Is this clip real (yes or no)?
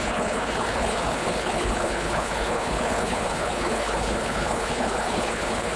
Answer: no